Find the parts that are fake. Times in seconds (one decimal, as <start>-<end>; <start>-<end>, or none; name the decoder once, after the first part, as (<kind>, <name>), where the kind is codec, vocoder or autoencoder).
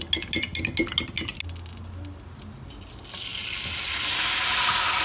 none